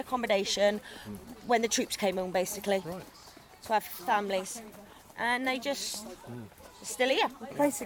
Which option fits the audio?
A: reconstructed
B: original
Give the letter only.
A